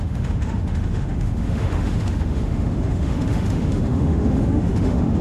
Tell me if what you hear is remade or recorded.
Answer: remade